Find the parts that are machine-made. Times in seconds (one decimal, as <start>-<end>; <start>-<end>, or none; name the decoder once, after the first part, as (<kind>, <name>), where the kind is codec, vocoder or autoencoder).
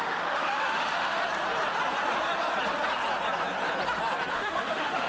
0.0-1.2 (autoencoder, DAC-VAE); 4.3-5.1